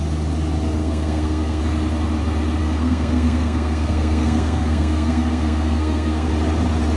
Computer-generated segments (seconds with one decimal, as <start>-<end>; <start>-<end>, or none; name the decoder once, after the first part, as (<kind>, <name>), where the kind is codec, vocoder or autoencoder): 0.8-1.6 (codec, SNAC); 2.6-6.3